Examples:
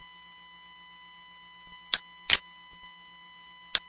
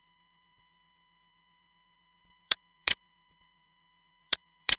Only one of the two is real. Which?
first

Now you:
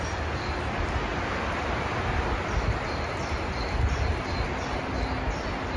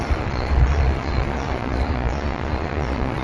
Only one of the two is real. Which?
first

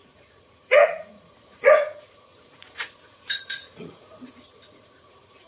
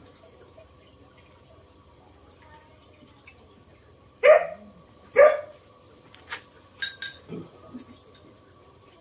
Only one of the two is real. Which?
second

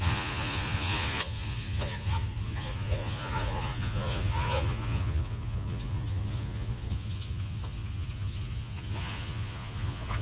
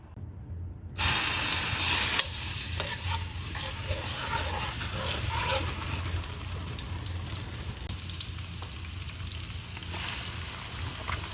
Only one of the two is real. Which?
second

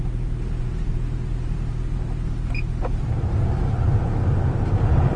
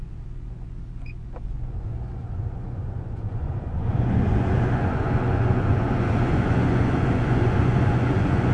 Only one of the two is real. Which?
first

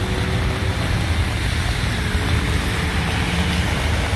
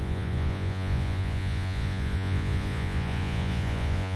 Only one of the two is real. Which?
first